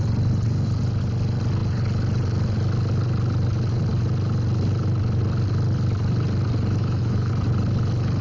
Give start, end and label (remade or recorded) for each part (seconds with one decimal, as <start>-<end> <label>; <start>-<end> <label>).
0.0-6.8 recorded; 6.8-7.3 remade; 7.3-8.2 recorded